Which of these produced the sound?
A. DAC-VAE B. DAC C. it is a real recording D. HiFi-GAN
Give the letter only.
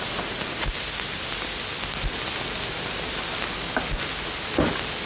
C